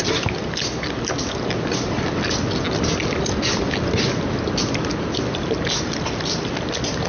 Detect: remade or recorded recorded